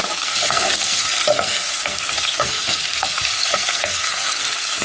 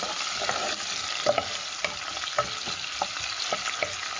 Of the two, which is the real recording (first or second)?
second